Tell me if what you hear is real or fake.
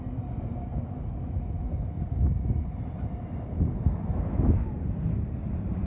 real